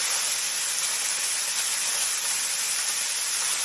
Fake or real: real